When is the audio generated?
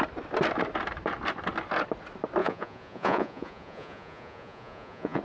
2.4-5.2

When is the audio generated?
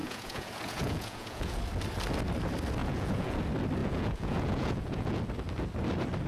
0.0-1.6; 2.8-3.4; 3.8-5.2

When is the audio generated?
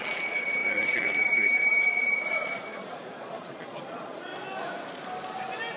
0.0-4.3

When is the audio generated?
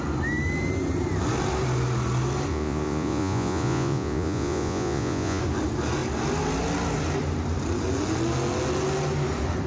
2.5-5.4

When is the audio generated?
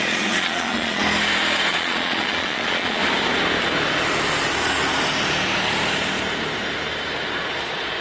0.0-1.0; 1.7-3.0; 7.5-8.0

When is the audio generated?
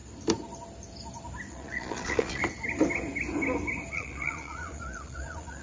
1.5-2.4; 3.9-5.6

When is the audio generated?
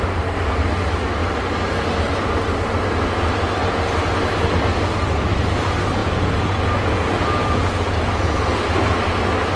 6.0-8.3